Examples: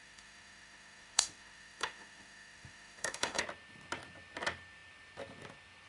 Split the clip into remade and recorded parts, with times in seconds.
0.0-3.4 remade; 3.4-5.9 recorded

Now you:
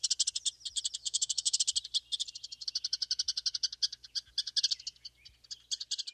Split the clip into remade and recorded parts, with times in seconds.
0.0-1.0 recorded; 1.0-1.6 remade; 1.6-6.1 recorded

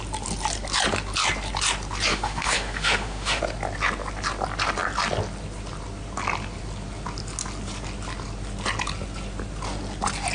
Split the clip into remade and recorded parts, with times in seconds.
0.0-2.1 recorded; 2.1-3.4 remade; 3.4-10.3 recorded

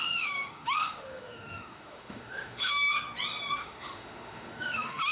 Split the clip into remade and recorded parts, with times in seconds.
0.0-2.9 remade; 2.9-3.5 recorded; 3.5-5.1 remade

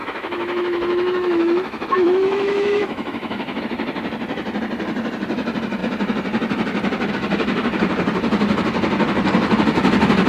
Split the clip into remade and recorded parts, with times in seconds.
0.0-3.6 remade; 3.6-10.3 recorded